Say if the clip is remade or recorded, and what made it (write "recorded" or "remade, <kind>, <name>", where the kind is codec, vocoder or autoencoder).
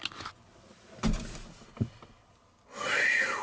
recorded